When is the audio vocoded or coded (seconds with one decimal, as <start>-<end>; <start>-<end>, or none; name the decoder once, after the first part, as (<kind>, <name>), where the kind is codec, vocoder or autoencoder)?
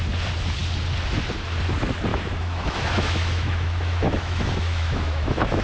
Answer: 2.1-5.6 (autoencoder, DAC-VAE)